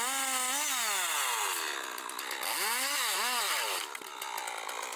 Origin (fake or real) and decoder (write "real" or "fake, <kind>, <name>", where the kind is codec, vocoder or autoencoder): real